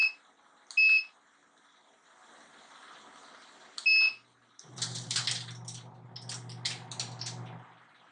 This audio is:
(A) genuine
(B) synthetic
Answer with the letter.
A